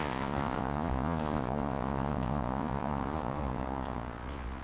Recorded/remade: remade